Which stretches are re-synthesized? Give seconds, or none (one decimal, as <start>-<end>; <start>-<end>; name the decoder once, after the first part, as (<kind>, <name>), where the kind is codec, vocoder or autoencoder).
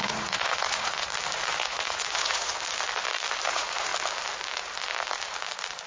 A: 0.0-1.1 (vocoder, Vocos); 1.6-2.5; 3.5-3.9